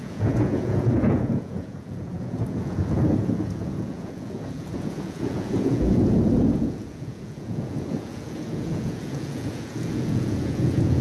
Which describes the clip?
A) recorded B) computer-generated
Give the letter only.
B